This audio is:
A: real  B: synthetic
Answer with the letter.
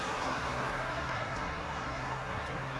B